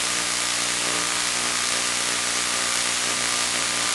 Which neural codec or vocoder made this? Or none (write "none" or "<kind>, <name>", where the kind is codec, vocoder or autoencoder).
none